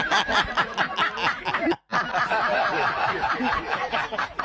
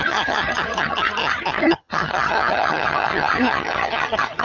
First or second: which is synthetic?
second